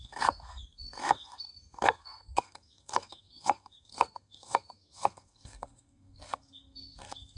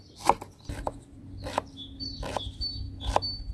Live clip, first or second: second